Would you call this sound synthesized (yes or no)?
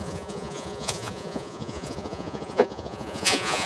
yes